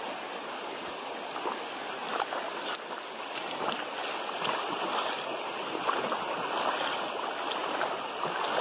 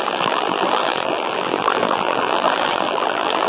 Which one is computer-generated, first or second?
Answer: second